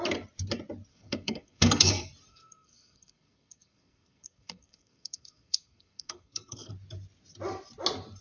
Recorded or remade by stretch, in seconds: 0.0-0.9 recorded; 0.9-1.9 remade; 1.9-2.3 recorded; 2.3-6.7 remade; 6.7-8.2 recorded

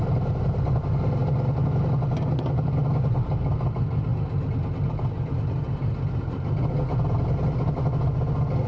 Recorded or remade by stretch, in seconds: 0.0-8.7 recorded

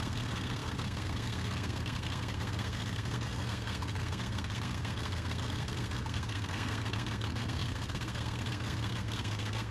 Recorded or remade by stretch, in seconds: 0.0-9.7 remade

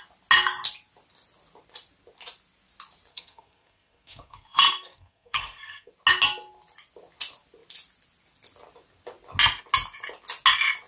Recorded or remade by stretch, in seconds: 0.0-3.1 recorded; 3.1-5.9 remade; 5.9-10.9 recorded